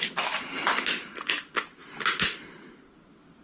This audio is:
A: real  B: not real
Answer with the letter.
A